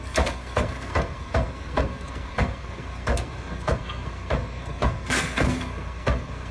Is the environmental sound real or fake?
fake